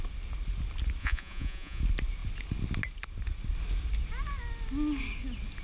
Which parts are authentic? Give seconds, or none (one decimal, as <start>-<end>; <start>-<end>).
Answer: 0.0-1.0; 1.8-5.6